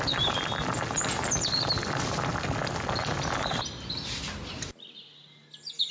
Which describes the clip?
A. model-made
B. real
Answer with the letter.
B